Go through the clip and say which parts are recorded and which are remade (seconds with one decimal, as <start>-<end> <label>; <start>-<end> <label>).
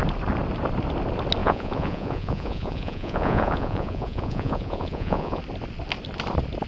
0.0-1.4 recorded; 1.4-5.4 remade; 5.4-6.7 recorded